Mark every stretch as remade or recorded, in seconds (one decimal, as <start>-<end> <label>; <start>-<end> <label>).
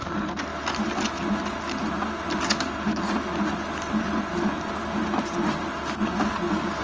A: 0.0-6.8 recorded